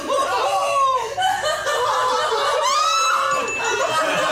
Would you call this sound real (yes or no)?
yes